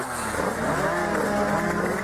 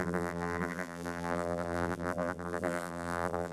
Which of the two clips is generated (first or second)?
second